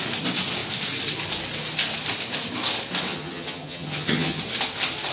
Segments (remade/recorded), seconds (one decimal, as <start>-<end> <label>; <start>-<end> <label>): 0.0-3.1 recorded; 3.1-4.4 remade; 4.4-5.1 recorded